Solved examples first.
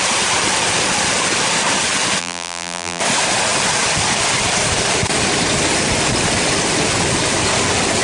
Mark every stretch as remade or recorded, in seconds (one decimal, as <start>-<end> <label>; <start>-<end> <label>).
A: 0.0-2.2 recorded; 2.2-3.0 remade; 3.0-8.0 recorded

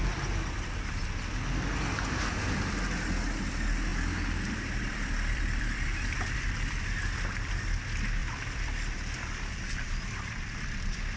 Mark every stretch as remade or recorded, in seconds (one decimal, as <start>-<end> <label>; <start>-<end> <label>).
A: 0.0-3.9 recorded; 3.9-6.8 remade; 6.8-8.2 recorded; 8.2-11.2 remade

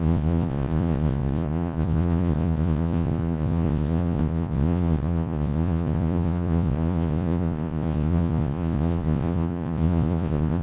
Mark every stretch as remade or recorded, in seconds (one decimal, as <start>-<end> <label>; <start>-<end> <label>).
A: 0.0-10.6 remade

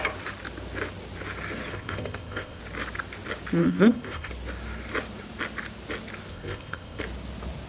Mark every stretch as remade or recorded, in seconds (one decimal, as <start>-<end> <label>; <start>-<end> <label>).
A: 0.0-1.7 recorded; 1.7-2.6 remade; 2.6-3.6 recorded; 3.6-4.3 remade; 4.3-6.3 recorded; 6.3-7.0 remade; 7.0-7.7 recorded

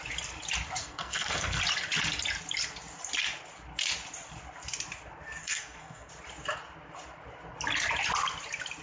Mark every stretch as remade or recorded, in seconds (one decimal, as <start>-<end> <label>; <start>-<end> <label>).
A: 0.0-0.8 recorded; 0.8-1.6 remade; 1.6-5.4 recorded; 5.4-6.1 remade; 6.1-8.8 recorded